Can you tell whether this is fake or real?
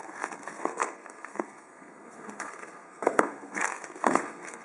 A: fake